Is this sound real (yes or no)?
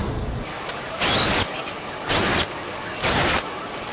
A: yes